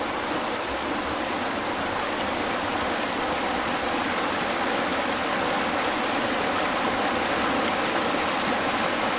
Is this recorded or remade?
recorded